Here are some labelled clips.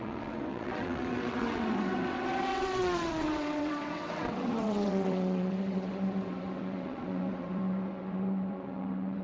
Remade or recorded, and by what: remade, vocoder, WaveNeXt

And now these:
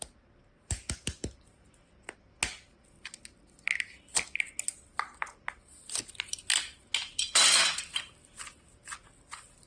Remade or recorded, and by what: recorded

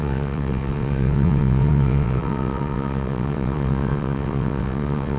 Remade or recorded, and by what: remade, vocoder, WaveNeXt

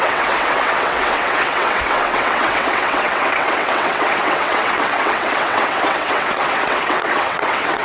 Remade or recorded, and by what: remade, vocoder, WaveNeXt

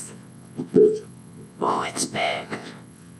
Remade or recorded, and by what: remade, vocoder, WaveNeXt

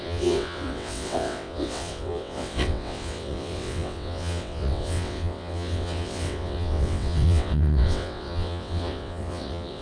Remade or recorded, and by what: remade, vocoder, WaveNeXt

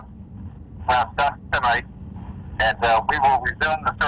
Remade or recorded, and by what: recorded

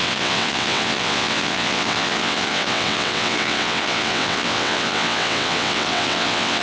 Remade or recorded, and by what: remade, vocoder, WaveNeXt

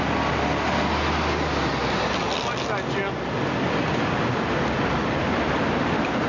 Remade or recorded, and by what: recorded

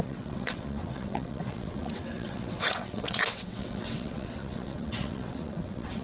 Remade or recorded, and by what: remade, vocoder, WaveNeXt